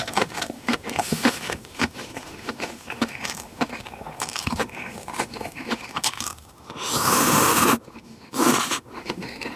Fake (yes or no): yes